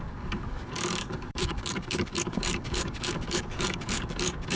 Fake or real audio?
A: fake